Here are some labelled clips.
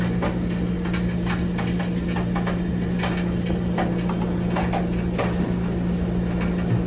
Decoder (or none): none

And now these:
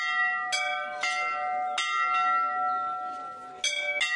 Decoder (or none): none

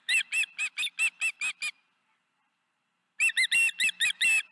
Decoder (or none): none